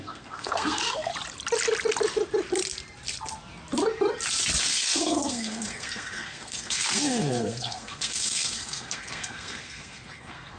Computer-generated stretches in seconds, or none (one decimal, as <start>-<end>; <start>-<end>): 0.0-1.1; 4.6-10.6